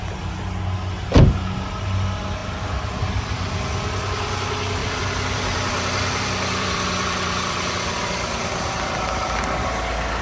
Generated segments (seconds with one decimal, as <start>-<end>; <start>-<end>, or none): 2.4-3.2; 4.8-9.4